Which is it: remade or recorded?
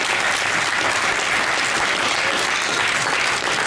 recorded